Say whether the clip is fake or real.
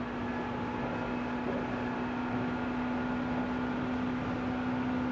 real